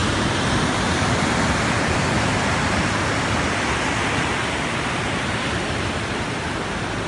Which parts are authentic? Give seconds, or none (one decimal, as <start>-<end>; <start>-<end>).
3.1-7.1